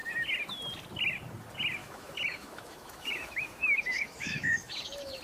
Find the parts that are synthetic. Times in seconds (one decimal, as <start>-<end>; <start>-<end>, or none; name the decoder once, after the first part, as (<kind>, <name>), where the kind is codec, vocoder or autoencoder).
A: 1.8-5.2 (autoencoder, DAC-VAE)